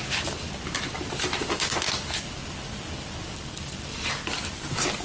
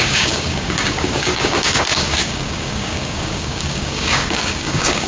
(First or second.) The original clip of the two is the first